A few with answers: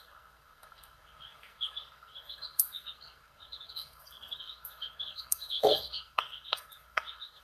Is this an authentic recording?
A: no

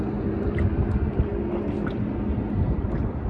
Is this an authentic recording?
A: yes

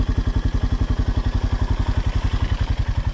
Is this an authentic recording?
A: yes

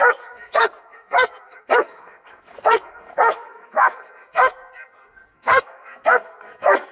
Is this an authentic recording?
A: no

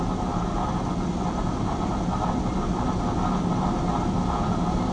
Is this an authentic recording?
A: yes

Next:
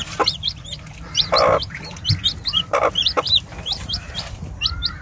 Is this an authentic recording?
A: yes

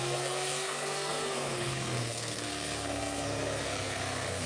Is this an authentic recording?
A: no